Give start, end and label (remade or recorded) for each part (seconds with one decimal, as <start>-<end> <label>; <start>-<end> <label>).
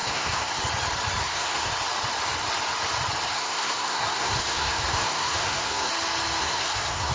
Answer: 0.0-0.6 remade; 0.6-1.2 recorded; 1.2-1.7 remade; 1.7-3.3 recorded; 3.3-5.9 remade; 5.9-6.4 recorded; 6.4-7.1 remade